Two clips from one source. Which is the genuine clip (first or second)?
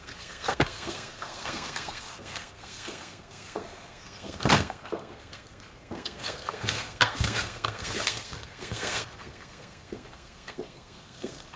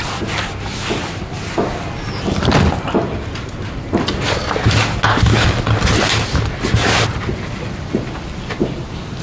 second